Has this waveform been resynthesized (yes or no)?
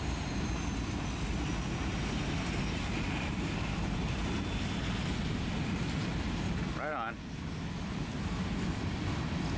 no